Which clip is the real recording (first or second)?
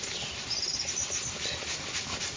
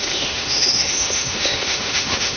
first